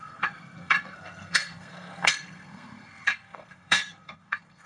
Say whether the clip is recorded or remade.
remade